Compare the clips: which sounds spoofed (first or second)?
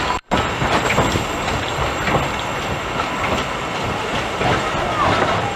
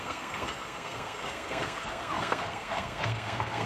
second